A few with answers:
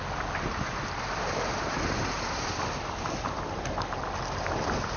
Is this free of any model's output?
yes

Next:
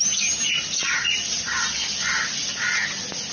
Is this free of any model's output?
yes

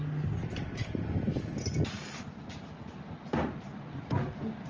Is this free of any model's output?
yes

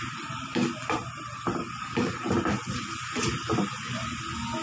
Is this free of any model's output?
yes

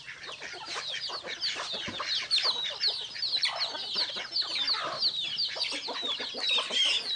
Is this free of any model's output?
yes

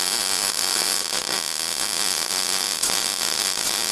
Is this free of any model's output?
yes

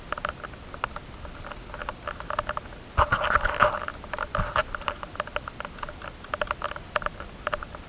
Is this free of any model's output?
yes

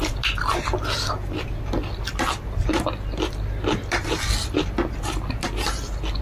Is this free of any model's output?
yes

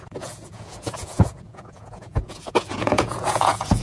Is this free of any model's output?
no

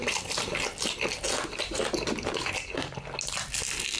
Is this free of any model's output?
yes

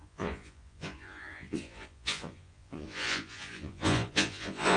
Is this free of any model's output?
no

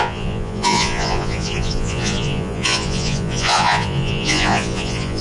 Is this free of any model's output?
no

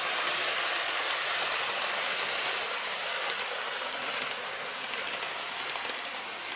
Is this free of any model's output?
yes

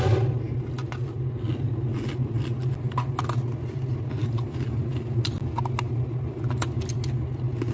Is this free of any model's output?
yes